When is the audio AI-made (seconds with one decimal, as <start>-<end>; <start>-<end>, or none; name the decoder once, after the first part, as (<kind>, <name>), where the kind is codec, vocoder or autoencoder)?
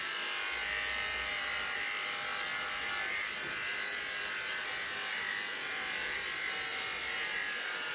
none